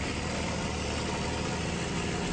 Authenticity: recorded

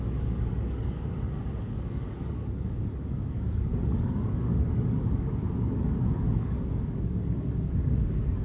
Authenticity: remade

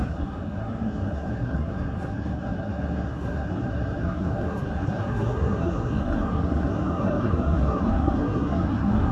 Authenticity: remade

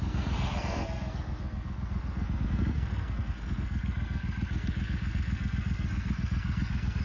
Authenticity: remade